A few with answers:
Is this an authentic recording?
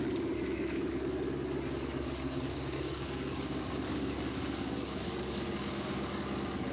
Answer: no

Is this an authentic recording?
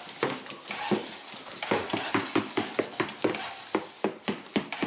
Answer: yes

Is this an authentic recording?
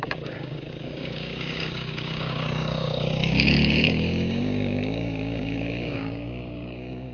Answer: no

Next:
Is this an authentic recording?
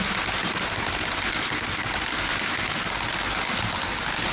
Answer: yes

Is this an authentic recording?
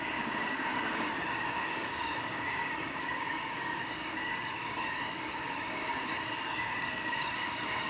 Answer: no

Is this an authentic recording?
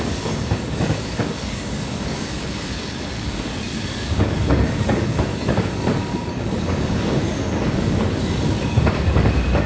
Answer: no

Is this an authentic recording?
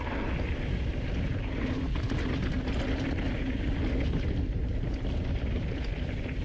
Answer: yes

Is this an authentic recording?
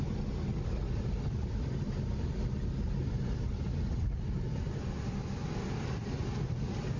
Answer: yes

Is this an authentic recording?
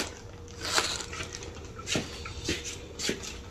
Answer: yes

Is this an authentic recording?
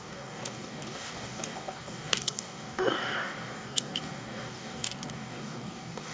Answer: no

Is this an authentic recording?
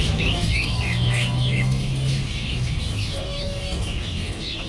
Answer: no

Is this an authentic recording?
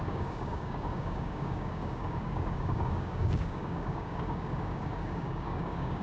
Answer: no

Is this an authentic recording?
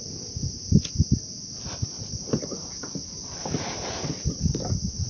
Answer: yes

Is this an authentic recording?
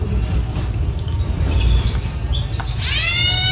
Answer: yes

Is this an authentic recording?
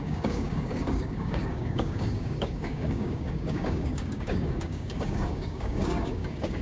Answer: no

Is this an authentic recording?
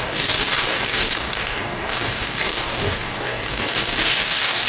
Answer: no